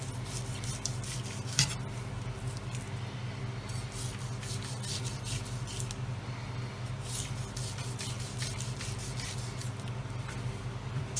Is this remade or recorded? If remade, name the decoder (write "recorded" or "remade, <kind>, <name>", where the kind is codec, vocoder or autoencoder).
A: recorded